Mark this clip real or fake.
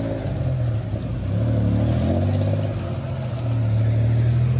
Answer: real